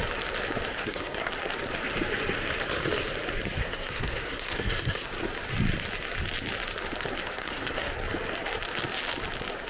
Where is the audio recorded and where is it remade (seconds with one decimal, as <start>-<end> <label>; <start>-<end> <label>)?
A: 0.0-0.7 recorded; 0.7-1.3 remade; 1.3-3.6 recorded; 3.6-5.1 remade; 5.1-7.4 recorded; 7.4-7.9 remade; 7.9-9.7 recorded